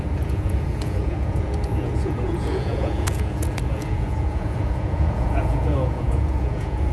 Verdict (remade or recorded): remade